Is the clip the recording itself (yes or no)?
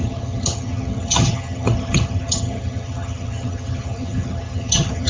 no